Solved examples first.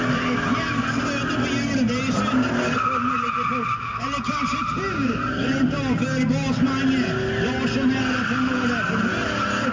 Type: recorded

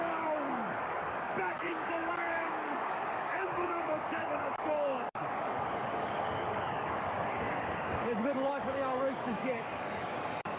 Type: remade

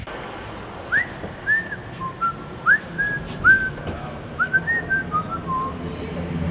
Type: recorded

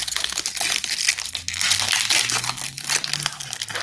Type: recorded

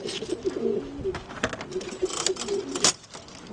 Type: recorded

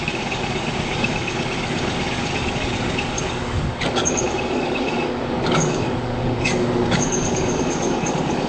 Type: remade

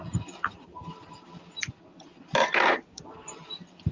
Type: recorded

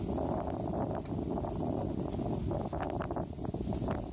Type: recorded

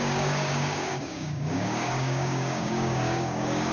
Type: remade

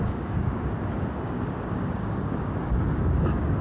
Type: remade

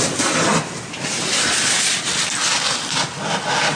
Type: recorded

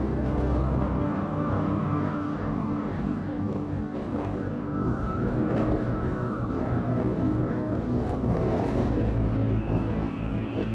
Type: remade